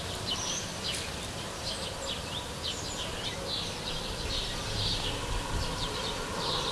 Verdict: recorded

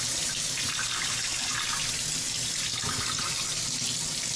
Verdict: recorded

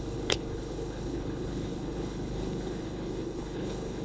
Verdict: remade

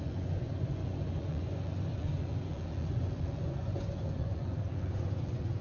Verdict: remade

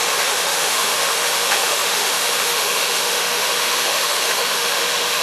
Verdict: remade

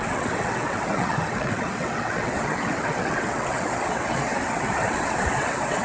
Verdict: remade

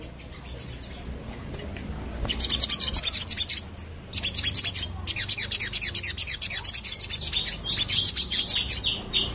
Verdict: recorded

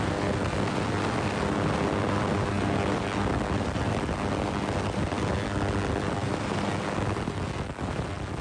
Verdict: recorded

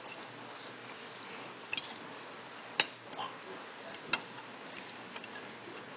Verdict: recorded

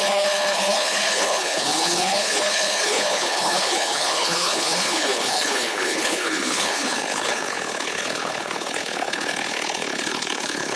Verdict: remade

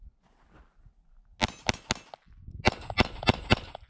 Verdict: recorded